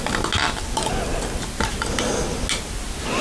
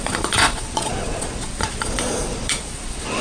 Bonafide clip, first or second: first